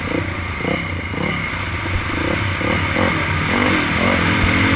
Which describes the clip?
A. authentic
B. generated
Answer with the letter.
A